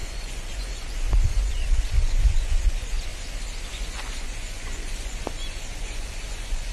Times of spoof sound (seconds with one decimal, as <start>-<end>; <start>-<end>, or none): 0.0-3.1; 3.7-6.7